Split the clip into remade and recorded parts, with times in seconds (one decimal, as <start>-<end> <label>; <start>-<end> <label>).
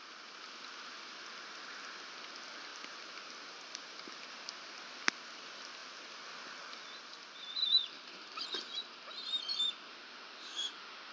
0.0-9.9 recorded; 9.9-11.1 remade